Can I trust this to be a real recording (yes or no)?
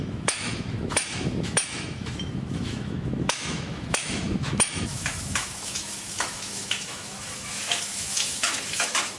no